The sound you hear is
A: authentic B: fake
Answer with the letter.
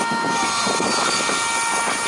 A